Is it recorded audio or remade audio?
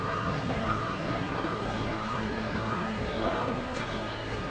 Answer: remade